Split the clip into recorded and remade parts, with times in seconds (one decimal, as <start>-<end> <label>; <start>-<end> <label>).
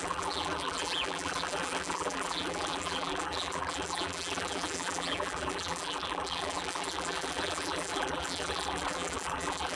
0.0-9.8 remade